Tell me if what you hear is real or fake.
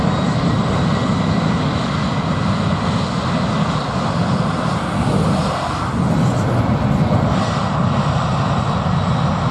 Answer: real